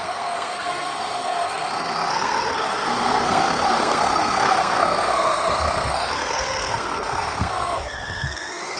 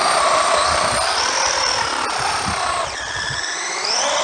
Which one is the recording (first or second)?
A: second